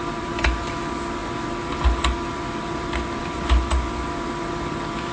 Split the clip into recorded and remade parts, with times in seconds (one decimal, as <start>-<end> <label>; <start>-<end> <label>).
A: 0.0-5.1 remade